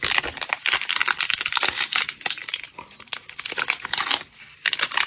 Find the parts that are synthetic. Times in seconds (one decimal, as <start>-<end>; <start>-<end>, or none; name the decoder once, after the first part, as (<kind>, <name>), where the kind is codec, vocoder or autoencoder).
none